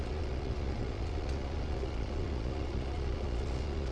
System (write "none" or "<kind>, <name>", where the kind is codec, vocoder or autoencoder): vocoder, Vocos